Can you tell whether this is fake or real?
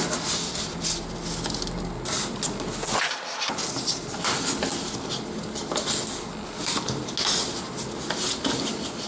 real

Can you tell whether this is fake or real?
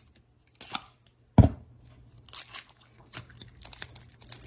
real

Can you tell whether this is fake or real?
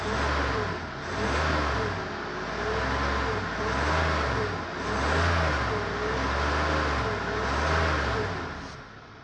real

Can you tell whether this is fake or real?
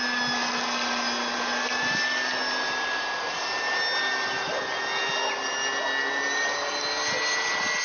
real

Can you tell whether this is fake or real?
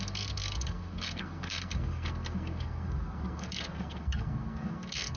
fake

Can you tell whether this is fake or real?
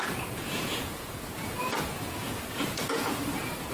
fake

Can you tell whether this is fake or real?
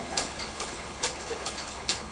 fake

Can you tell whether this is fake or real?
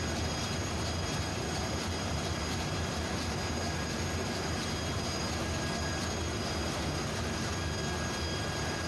real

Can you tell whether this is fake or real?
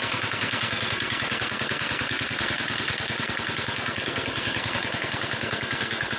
fake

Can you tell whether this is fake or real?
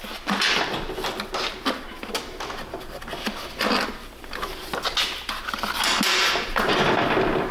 real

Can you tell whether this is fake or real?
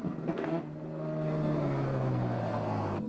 fake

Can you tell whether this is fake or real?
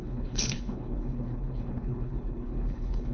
fake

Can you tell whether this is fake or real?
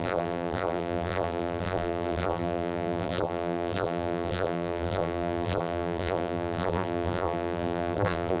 fake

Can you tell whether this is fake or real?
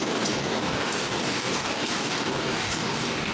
fake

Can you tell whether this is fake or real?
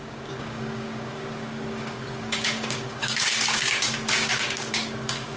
fake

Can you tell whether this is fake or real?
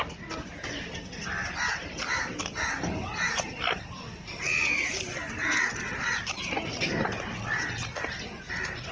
real